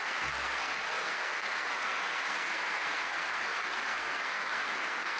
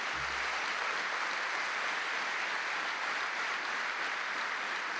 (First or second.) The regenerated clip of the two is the first